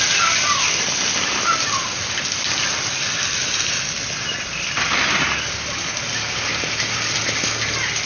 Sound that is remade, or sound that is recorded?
recorded